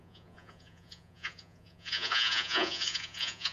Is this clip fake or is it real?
fake